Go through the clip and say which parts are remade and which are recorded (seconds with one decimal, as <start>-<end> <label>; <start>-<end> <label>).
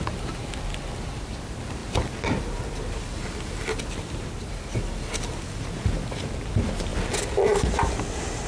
0.0-6.9 remade; 6.9-8.5 recorded